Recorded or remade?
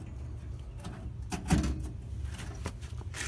recorded